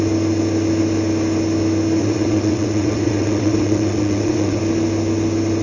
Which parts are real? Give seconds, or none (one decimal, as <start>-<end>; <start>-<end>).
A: 0.0-2.0; 4.6-5.6